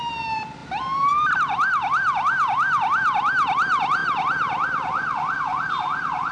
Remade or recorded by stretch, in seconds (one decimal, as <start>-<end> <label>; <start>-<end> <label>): 0.0-6.3 recorded